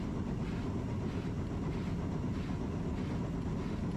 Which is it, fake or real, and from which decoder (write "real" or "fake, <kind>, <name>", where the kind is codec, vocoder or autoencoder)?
real